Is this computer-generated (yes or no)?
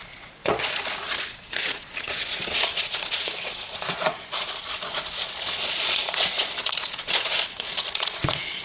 yes